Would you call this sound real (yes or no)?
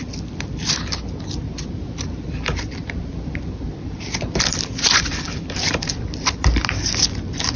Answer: no